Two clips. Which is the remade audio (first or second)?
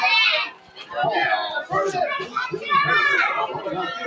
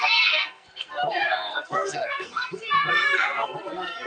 second